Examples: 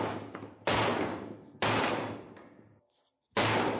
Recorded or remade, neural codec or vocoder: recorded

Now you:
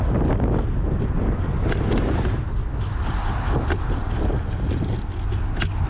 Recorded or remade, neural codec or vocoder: recorded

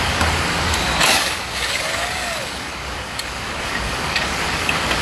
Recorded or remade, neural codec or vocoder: remade, codec, DAC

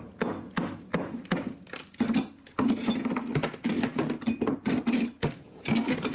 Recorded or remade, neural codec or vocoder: recorded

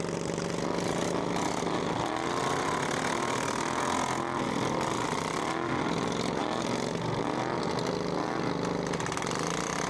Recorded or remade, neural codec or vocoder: recorded